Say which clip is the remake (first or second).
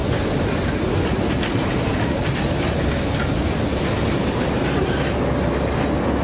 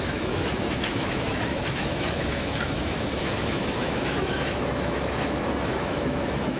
second